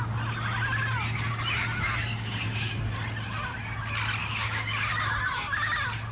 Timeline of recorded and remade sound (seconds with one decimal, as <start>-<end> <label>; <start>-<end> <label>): 0.0-2.1 recorded; 2.1-2.9 remade; 2.9-4.2 recorded; 4.2-4.9 remade; 4.9-6.1 recorded